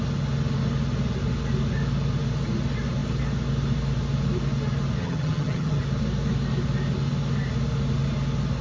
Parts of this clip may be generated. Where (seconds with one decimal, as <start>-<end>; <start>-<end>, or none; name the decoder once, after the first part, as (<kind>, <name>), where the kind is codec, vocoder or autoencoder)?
5.0-5.8 (vocoder, HiFi-GAN)